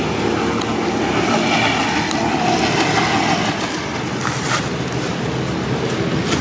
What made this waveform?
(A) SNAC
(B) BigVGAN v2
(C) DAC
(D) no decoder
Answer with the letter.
D